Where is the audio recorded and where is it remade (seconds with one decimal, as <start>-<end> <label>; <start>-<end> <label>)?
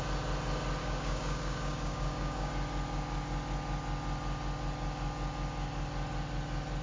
0.0-0.8 recorded; 0.8-2.5 remade; 2.5-6.8 recorded